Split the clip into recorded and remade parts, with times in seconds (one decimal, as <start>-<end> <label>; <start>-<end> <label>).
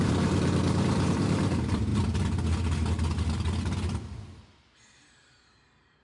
0.0-1.9 remade; 1.9-5.1 recorded; 5.1-6.0 remade